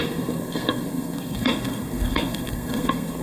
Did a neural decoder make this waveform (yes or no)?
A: yes